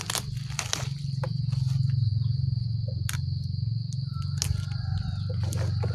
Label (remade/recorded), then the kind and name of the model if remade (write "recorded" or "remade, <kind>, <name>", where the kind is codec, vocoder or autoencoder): recorded